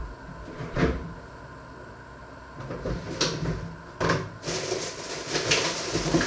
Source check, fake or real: real